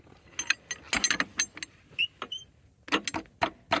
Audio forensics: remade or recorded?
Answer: recorded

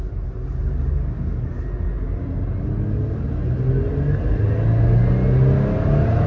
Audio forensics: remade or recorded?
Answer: recorded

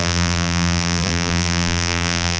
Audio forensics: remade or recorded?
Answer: remade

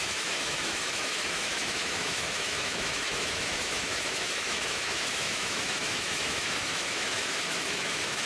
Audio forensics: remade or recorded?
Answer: remade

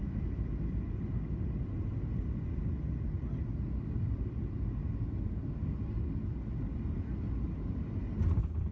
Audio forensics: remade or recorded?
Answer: recorded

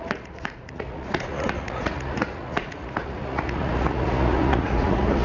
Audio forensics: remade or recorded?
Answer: remade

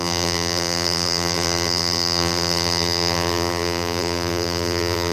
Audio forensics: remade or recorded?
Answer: remade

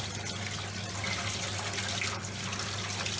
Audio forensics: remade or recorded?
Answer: recorded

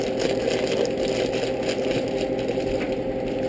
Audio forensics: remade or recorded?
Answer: recorded